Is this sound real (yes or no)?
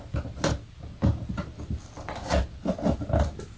yes